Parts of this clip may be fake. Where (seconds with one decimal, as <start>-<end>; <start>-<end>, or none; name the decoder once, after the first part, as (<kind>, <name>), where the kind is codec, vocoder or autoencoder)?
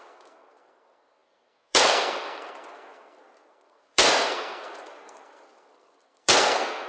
0.0-6.9 (codec, SNAC)